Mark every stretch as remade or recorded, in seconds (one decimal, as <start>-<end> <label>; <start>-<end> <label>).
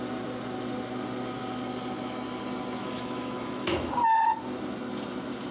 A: 0.0-2.8 recorded; 2.8-3.9 remade; 3.9-5.5 recorded